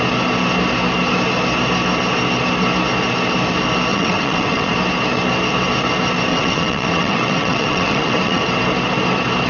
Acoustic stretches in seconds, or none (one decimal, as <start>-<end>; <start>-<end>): 0.0-3.9; 4.7-6.3; 8.4-9.5